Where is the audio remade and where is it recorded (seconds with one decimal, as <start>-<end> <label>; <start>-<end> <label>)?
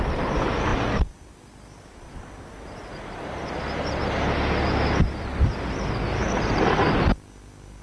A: 0.0-7.8 recorded